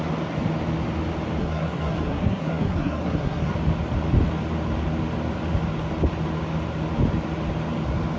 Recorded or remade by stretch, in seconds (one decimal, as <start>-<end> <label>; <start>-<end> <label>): 0.0-1.4 recorded; 1.4-3.5 remade; 3.5-8.2 recorded